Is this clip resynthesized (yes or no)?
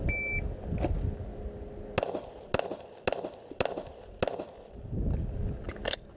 no